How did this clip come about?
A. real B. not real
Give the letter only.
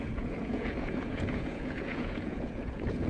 B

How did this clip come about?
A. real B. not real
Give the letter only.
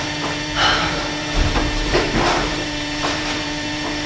B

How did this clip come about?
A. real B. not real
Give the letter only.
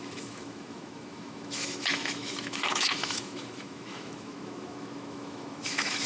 B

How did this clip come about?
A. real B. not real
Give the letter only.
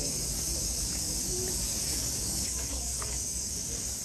B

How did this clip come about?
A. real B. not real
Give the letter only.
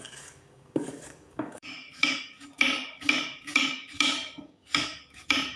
B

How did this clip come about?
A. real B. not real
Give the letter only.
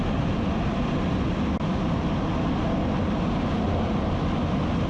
A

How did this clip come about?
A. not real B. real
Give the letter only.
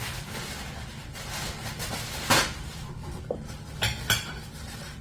B